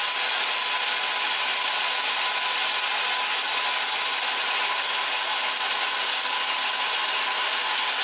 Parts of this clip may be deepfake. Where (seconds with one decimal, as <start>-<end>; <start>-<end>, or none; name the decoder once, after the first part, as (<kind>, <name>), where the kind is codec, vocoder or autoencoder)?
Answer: none